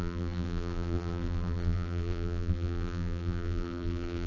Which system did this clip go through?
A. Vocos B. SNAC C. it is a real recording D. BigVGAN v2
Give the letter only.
D